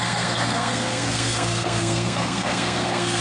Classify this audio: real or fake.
fake